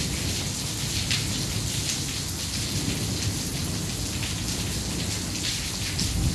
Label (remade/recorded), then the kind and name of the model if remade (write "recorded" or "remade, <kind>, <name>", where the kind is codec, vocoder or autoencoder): recorded